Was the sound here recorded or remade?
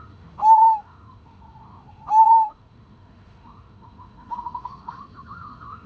remade